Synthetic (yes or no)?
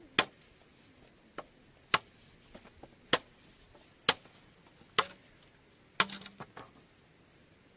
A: no